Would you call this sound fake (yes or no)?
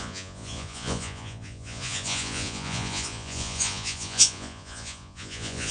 yes